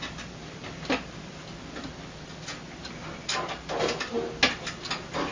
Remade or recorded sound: recorded